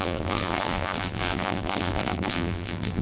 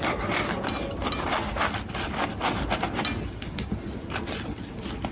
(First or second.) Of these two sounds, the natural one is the second